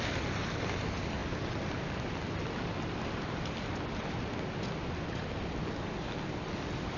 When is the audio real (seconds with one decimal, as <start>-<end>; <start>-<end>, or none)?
0.0-7.0